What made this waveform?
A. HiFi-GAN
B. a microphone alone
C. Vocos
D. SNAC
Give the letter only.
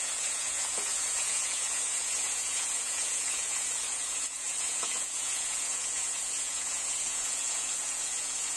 C